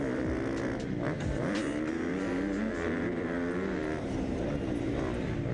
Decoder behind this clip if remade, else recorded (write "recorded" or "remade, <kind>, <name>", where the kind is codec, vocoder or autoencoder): recorded